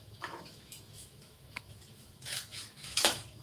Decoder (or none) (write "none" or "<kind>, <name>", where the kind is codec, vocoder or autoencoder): autoencoder, DAC-VAE